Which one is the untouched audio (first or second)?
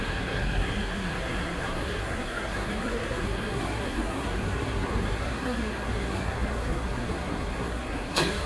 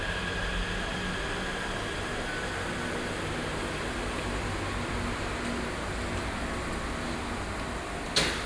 second